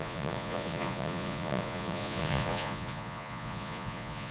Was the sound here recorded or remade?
remade